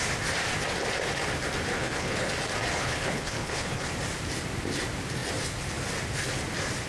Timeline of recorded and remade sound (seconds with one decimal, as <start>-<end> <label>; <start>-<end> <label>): 0.0-1.7 recorded; 1.7-2.3 remade; 2.3-2.7 recorded; 2.7-3.9 remade; 3.9-6.9 recorded